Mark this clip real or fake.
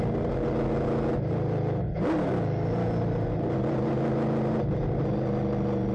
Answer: real